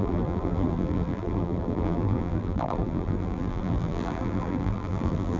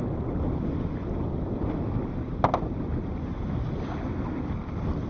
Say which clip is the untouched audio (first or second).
second